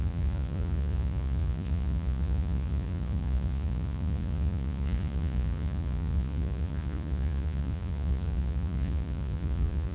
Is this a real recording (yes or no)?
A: no